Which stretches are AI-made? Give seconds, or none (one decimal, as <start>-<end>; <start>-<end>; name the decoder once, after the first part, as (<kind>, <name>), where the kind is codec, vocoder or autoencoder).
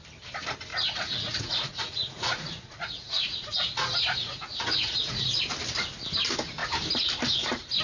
0.7-5.4 (vocoder, Vocos)